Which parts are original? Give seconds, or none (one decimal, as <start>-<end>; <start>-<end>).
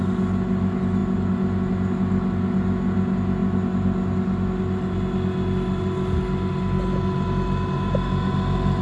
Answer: 0.0-8.8